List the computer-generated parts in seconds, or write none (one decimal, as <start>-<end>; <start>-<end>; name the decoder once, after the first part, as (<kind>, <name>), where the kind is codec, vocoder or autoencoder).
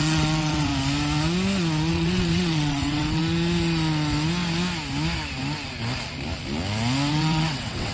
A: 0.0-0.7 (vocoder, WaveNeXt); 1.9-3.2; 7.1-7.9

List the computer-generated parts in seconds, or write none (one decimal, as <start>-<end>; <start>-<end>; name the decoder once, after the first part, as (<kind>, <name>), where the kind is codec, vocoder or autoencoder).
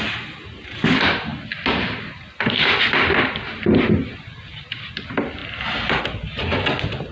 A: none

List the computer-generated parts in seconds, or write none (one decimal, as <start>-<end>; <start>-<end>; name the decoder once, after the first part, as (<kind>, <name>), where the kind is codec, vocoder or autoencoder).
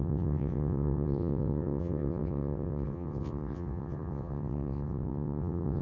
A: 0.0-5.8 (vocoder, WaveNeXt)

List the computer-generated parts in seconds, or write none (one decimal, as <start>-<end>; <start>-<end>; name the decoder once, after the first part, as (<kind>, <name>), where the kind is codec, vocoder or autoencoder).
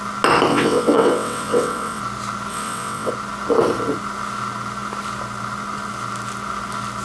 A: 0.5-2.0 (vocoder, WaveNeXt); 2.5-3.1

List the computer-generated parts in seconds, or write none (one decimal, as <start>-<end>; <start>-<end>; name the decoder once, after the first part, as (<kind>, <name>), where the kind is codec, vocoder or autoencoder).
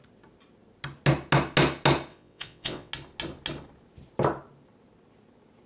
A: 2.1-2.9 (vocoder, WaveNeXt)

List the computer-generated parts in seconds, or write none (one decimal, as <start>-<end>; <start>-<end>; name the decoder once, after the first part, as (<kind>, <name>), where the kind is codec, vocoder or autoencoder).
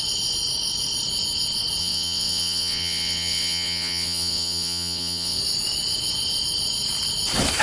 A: 1.8-5.4 (vocoder, WaveNeXt)